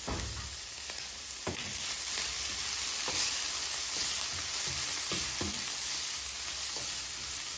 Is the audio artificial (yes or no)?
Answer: no